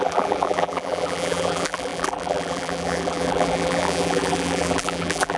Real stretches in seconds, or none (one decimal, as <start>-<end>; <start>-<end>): none